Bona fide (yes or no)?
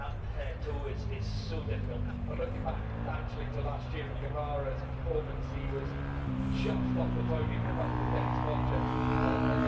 yes